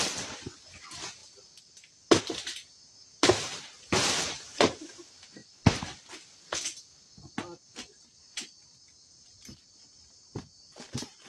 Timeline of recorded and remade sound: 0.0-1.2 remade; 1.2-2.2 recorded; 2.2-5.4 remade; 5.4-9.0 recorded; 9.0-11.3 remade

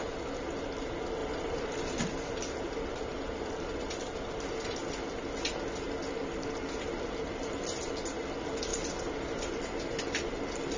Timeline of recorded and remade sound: 0.0-1.2 recorded; 1.2-2.0 remade; 2.0-10.8 recorded

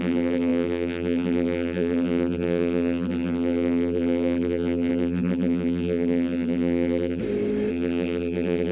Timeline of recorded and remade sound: 0.0-7.2 remade; 7.2-7.7 recorded; 7.7-8.7 remade

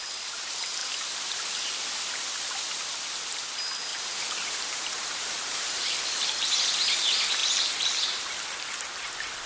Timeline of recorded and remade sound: 0.0-3.9 recorded; 3.9-6.3 remade; 6.3-7.4 recorded; 7.4-8.8 remade; 8.8-9.5 recorded